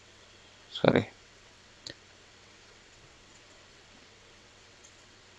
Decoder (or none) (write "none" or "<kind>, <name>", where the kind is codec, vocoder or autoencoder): vocoder, WaveNeXt